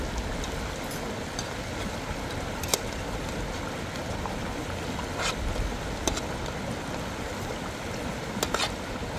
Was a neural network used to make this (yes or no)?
no